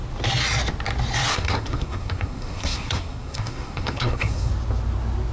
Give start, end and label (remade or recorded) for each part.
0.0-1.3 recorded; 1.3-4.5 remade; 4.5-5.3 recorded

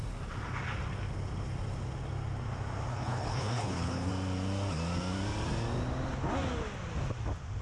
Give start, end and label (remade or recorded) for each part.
0.0-2.9 recorded; 2.9-4.1 remade; 4.1-7.6 recorded